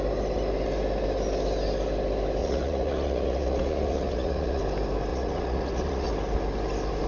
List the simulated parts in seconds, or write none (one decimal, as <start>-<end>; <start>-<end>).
2.4-4.6; 5.1-6.1